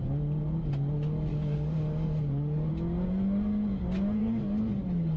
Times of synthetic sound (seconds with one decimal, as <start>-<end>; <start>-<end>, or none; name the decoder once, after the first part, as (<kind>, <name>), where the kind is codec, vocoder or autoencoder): 1.3-2.7 (codec, DAC); 4.2-5.2